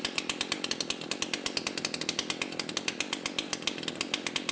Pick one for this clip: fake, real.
real